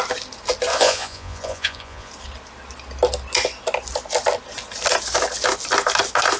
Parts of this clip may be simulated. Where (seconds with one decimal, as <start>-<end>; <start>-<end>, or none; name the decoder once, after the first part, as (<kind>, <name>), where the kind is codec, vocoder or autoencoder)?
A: 0.7-2.1 (vocoder, Vocos)